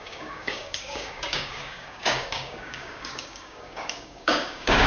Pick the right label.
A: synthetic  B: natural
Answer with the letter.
A